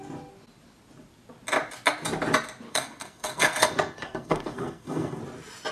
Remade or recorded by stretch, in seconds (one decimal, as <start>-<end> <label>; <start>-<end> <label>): 0.0-2.7 recorded; 2.7-5.2 remade; 5.2-5.7 recorded